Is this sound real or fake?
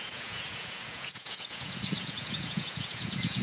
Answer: fake